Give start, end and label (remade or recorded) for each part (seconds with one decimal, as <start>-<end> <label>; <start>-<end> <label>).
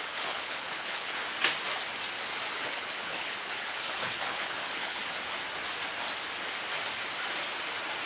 0.0-1.2 remade; 1.2-2.7 recorded; 2.7-5.0 remade; 5.0-8.1 recorded